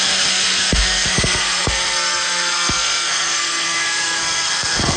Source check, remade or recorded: remade